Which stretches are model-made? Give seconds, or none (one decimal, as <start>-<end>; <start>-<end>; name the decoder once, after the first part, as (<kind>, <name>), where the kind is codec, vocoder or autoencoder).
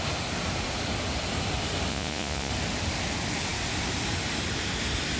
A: 1.9-2.5 (vocoder, Vocos)